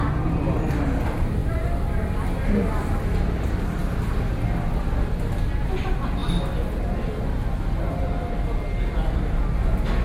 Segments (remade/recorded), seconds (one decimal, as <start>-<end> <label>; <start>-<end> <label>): 0.0-10.0 recorded